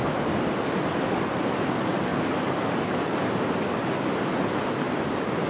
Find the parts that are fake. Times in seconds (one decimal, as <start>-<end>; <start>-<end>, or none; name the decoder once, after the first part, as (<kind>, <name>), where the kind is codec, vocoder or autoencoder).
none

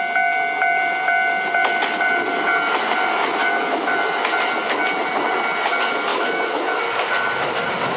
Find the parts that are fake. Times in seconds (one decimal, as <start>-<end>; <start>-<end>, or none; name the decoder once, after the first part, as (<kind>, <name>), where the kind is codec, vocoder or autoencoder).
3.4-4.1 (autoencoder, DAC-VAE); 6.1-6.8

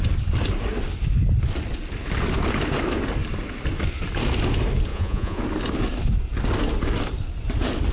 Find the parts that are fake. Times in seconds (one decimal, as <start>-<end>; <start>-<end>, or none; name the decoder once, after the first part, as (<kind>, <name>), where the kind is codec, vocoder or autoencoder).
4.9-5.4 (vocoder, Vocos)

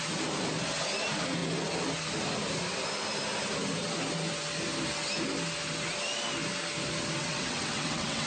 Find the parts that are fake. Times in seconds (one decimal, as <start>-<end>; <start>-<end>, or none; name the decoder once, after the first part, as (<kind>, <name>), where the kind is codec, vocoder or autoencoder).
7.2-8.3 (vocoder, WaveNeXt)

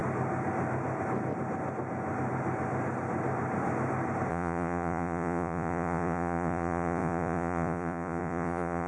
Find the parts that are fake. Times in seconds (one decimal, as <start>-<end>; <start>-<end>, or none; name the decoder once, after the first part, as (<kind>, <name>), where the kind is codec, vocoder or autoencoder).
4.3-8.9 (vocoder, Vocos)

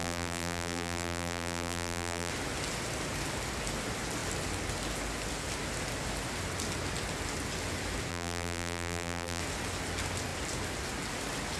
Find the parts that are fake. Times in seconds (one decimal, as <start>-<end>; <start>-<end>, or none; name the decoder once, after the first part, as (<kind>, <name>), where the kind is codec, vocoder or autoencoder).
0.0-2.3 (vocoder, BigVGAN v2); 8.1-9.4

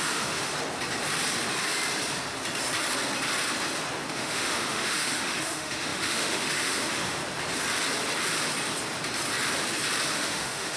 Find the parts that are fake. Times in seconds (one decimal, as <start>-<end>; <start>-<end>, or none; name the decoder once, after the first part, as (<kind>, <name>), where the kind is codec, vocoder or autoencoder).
0.0-0.5 (autoencoder, DAC-VAE); 4.1-7.2; 10.1-10.8